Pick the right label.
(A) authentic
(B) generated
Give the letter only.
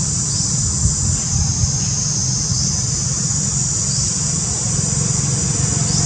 A